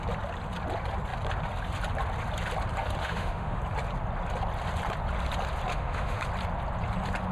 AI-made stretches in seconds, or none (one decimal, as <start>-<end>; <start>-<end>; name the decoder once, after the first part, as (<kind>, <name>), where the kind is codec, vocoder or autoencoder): 3.0-3.6 (autoencoder, DAC-VAE); 5.7-6.2